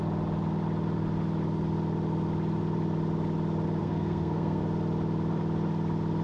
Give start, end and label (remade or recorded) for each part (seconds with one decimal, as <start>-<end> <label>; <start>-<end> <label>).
0.0-3.8 recorded; 3.8-4.6 remade; 4.6-6.2 recorded